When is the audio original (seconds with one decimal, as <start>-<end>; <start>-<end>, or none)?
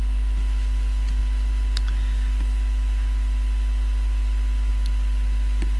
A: 0.0-5.8